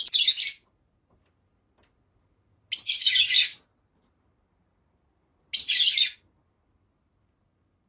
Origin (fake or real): real